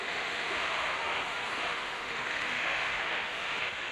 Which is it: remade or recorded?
remade